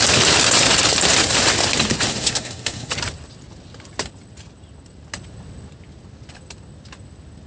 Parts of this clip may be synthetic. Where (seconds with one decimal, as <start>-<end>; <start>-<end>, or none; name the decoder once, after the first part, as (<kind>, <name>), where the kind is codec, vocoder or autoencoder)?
2.1-2.9 (codec, SNAC)